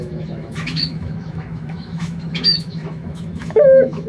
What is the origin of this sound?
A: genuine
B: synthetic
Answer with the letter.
B